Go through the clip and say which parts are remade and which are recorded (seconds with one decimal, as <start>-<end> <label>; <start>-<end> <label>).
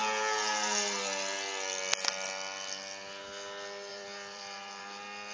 0.0-3.9 recorded; 3.9-4.8 remade; 4.8-5.3 recorded